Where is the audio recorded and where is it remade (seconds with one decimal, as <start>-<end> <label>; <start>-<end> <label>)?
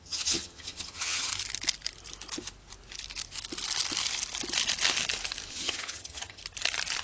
0.0-1.3 remade; 1.3-5.5 recorded; 5.5-6.4 remade; 6.4-7.0 recorded